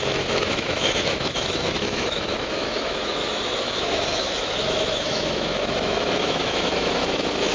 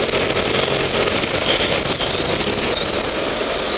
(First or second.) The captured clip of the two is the second